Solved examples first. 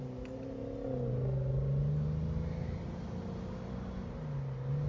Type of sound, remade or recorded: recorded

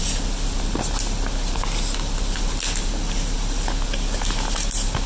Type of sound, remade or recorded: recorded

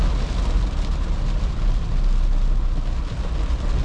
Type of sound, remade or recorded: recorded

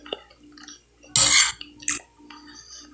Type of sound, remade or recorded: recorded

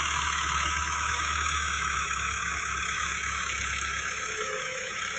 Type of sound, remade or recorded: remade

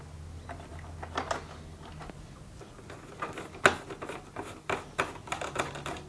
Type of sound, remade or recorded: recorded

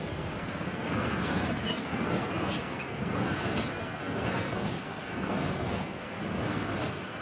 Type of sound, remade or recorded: remade